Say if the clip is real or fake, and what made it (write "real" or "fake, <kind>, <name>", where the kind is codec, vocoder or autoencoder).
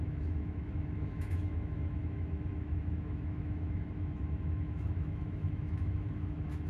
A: fake, autoencoder, DAC-VAE